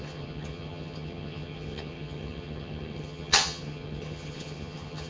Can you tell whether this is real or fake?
fake